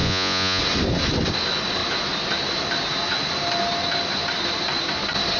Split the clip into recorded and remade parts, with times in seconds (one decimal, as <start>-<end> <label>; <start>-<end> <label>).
0.0-0.6 remade; 0.6-5.4 recorded